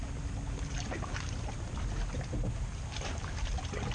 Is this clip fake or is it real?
real